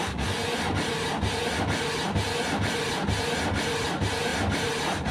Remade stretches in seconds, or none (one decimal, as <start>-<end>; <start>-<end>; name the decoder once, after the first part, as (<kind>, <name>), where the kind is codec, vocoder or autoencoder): none